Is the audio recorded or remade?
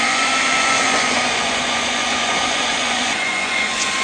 remade